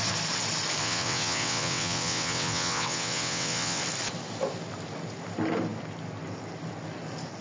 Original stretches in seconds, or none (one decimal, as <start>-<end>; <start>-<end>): 0.0-0.8; 3.8-7.4